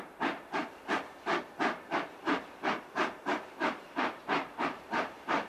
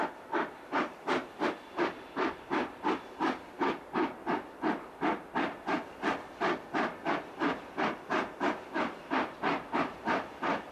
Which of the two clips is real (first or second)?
second